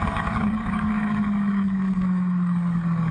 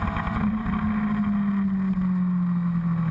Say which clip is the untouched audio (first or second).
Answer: second